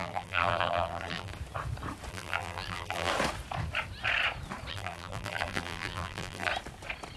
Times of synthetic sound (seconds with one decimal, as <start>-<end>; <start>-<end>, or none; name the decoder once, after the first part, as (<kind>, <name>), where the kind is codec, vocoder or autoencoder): 0.0-1.3 (vocoder, BigVGAN v2); 2.1-3.1; 4.7-6.5